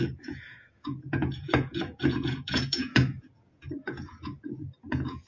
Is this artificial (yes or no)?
yes